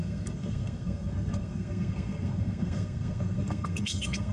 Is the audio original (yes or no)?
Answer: no